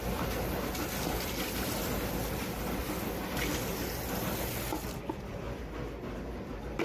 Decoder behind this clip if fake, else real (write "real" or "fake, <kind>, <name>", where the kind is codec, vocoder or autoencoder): real